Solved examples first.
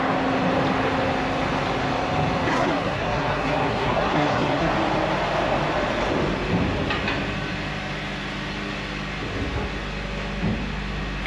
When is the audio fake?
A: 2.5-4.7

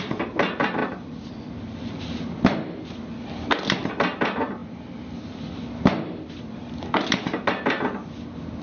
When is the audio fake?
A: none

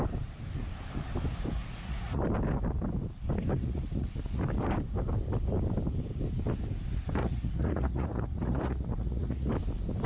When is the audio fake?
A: 1.6-2.2; 3.6-4.4; 7.2-9.5

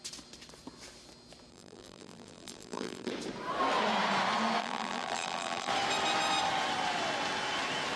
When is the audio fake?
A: 1.5-3.1; 4.6-5.7

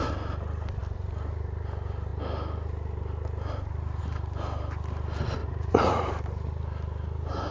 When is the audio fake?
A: 5.4-6.1